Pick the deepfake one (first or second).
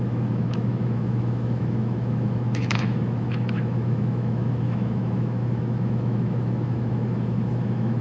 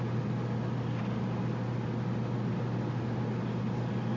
first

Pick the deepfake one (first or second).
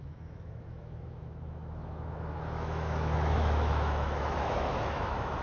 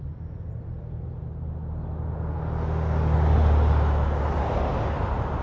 first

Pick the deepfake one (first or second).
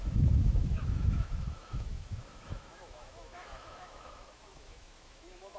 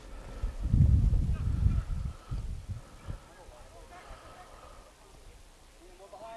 first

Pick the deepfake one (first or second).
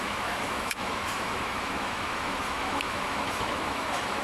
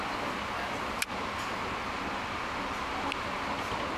first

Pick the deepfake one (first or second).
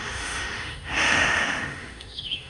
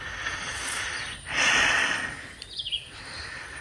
first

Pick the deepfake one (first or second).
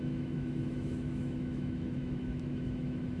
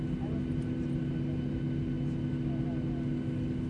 first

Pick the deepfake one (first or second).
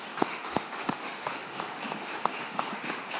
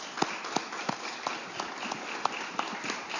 first